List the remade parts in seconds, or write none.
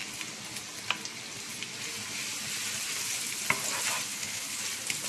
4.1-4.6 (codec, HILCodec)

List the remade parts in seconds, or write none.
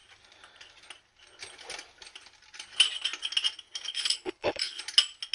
3.9-4.8 (codec, HILCodec)